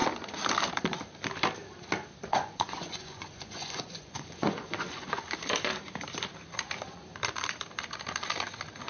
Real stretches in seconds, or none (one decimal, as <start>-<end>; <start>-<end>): 0.0-2.3; 5.3-8.9